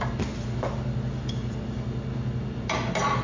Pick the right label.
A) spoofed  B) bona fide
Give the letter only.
B